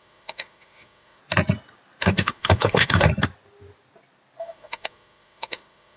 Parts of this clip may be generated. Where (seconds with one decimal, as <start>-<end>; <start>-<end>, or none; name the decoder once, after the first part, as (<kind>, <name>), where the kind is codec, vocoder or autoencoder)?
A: 0.0-1.2 (autoencoder, DAC-VAE); 2.0-3.1; 4.4-6.0